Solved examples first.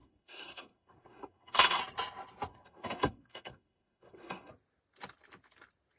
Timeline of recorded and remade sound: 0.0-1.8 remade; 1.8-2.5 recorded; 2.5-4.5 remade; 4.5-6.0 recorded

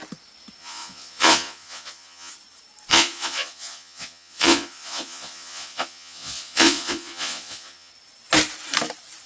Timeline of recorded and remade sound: 0.0-0.6 recorded; 0.6-2.3 remade; 2.3-2.9 recorded; 2.9-7.9 remade; 7.9-9.3 recorded